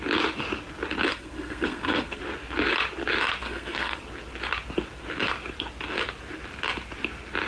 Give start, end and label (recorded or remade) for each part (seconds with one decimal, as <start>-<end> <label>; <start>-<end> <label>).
0.0-1.1 recorded; 1.1-2.2 remade; 2.2-3.4 recorded; 3.4-4.0 remade; 4.0-7.5 recorded